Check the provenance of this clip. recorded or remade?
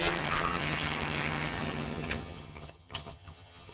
remade